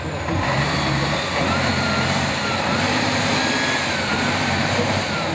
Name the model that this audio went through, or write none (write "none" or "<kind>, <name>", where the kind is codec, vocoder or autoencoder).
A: vocoder, BigVGAN v2